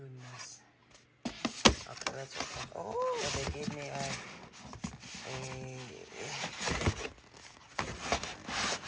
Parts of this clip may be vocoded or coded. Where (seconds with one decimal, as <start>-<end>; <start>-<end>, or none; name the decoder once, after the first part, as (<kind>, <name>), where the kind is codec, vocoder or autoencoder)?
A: none